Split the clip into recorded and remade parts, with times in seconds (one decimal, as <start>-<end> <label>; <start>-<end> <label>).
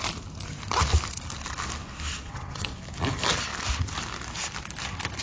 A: 0.0-2.1 recorded; 2.1-2.8 remade; 2.8-5.2 recorded